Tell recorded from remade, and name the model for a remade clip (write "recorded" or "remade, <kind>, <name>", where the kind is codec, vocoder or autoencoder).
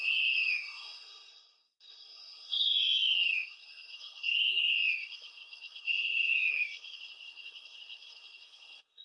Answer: remade, codec, SNAC